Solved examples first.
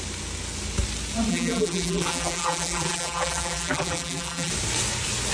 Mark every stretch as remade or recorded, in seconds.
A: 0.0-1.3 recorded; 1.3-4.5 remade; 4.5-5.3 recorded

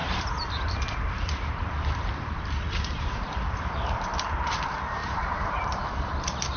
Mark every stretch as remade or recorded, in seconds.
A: 0.0-4.0 remade; 4.0-5.0 recorded; 5.0-5.8 remade; 5.8-6.6 recorded

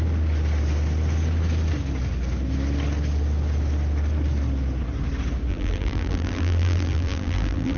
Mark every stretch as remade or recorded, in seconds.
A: 0.0-5.5 recorded; 5.5-7.8 remade

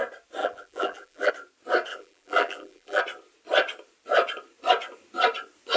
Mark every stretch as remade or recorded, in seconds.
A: 0.0-0.4 recorded; 0.4-1.3 remade; 1.3-1.9 recorded; 1.9-3.0 remade; 3.0-5.8 recorded

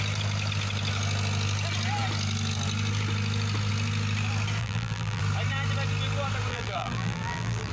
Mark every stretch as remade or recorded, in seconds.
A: 0.0-4.6 recorded; 4.6-5.2 remade; 5.2-6.5 recorded; 6.5-7.7 remade

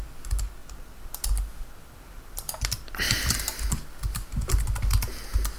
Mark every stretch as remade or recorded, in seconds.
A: 0.0-0.6 recorded; 0.6-3.3 remade; 3.3-5.6 recorded

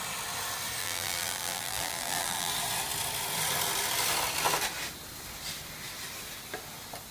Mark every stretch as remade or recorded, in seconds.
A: 0.0-0.8 recorded; 0.8-2.5 remade; 2.5-7.1 recorded

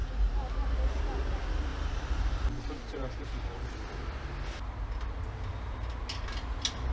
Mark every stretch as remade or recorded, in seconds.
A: 0.0-1.7 recorded; 1.7-3.6 remade; 3.6-6.9 recorded